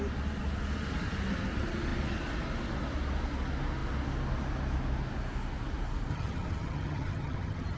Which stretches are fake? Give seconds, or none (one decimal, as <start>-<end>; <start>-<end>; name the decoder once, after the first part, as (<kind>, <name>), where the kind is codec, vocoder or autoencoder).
6.1-7.8 (vocoder, HiFi-GAN)